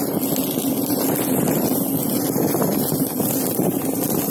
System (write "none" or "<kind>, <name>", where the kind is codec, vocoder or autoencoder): none